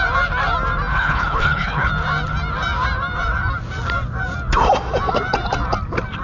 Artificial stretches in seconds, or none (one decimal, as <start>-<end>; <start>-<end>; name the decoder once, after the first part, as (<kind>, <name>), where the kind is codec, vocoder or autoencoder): 0.9-1.9 (codec, HILCodec)